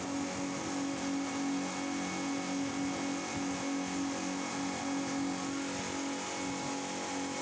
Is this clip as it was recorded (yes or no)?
yes